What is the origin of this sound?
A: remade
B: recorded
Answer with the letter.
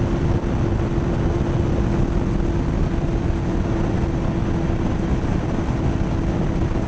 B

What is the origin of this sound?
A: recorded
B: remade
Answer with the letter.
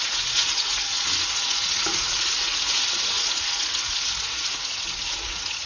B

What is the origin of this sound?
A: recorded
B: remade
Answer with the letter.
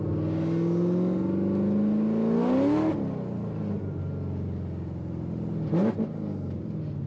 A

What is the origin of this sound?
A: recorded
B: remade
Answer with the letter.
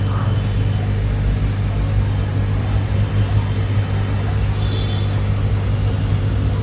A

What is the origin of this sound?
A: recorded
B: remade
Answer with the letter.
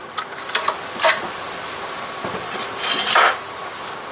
A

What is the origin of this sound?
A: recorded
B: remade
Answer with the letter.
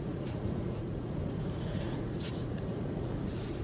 B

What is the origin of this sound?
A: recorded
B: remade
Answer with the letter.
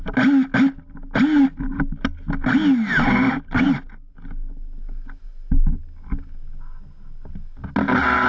A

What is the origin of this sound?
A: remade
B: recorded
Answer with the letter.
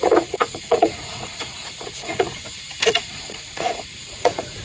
A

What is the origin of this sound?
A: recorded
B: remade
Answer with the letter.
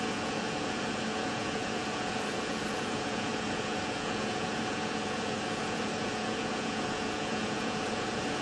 B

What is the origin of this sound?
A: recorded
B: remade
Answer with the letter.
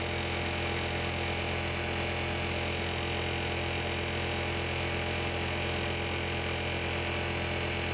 A